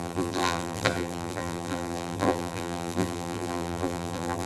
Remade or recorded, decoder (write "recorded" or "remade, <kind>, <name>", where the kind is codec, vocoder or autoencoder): remade, vocoder, BigVGAN v2